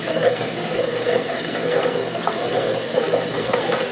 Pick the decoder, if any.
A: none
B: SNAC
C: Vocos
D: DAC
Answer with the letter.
B